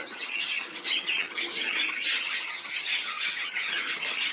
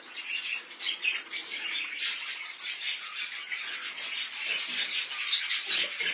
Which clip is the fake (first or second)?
first